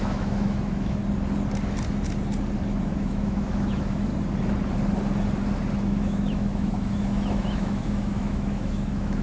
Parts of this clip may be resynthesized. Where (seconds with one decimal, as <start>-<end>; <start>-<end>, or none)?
0.0-1.0; 2.8-4.1; 5.8-9.2